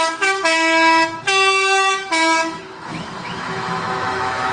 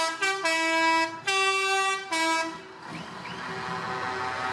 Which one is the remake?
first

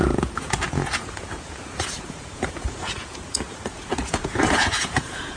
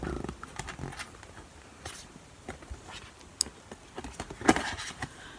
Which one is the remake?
first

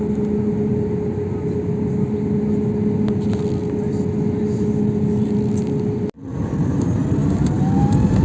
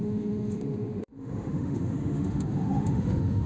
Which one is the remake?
second